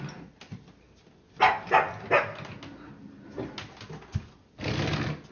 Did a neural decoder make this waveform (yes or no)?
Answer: no